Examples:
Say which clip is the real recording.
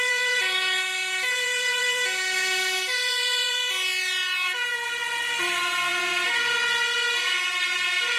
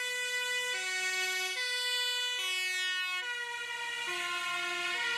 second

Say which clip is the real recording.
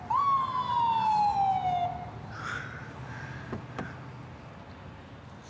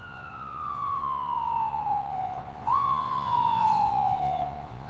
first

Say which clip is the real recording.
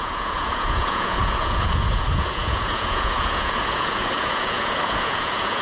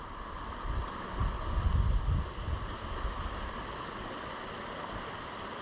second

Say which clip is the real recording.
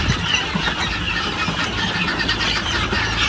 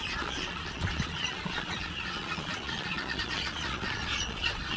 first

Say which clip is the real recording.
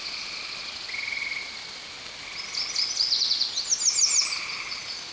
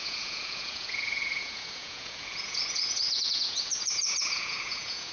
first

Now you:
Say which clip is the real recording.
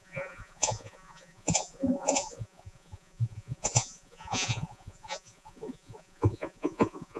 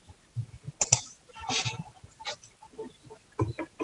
second